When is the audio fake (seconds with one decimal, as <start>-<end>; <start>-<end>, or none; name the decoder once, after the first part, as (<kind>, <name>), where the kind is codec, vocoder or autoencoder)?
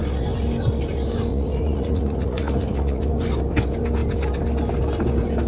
1.3-3.1 (vocoder, Vocos)